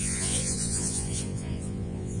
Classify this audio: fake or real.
fake